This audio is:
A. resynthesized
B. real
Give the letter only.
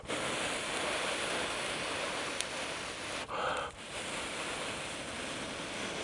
B